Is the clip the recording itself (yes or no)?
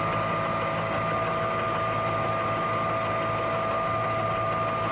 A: yes